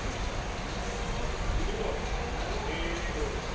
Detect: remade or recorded recorded